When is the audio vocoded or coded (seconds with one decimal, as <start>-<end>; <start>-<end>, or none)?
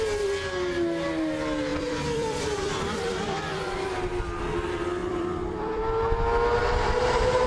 1.7-4.4; 5.0-5.8